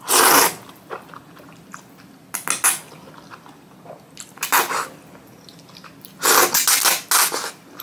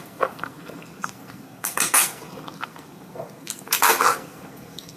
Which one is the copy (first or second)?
second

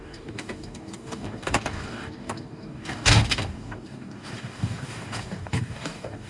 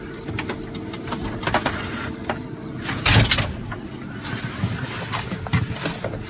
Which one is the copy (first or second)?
first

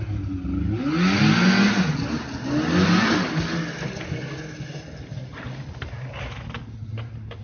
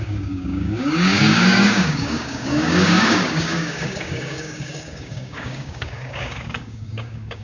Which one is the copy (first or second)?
second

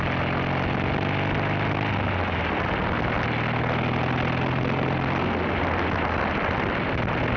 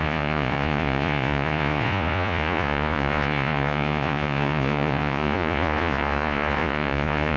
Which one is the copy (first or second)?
second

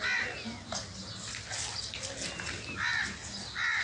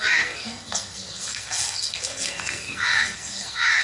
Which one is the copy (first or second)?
second